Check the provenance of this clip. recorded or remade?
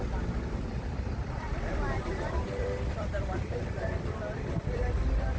remade